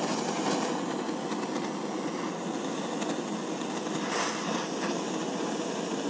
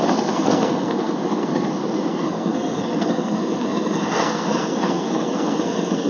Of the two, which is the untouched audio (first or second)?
first